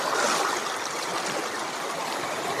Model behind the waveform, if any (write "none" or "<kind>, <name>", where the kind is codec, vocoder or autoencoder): none